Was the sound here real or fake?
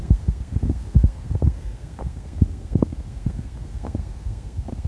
fake